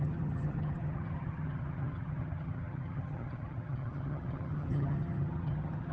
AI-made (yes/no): yes